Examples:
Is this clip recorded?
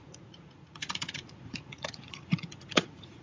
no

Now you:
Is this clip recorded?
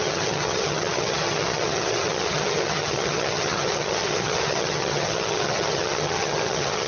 no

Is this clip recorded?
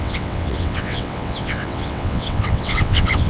no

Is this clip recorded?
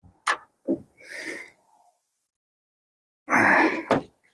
yes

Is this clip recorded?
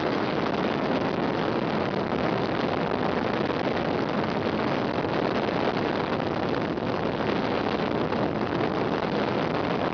yes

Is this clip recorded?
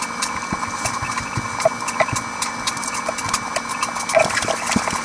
yes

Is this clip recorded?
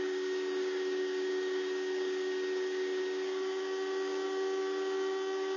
no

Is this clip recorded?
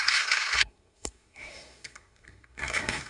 no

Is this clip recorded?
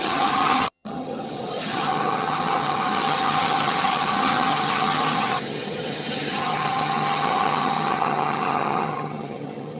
no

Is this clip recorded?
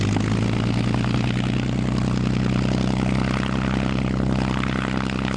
yes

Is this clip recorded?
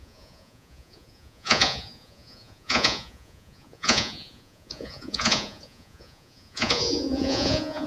no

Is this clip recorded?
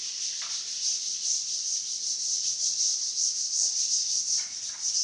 yes